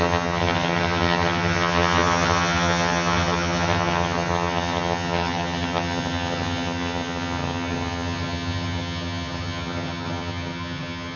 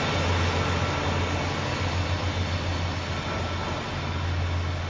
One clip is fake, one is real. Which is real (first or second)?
second